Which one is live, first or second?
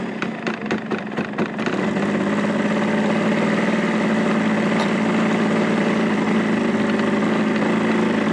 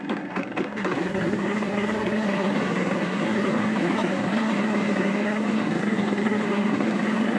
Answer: first